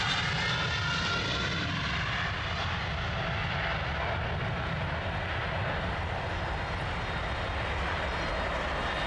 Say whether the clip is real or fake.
real